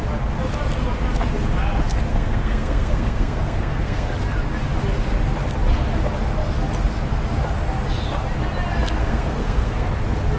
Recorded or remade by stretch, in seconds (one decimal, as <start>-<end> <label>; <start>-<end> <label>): 0.0-2.1 recorded; 2.1-4.1 remade; 4.1-9.0 recorded; 9.0-9.9 remade; 9.9-10.4 recorded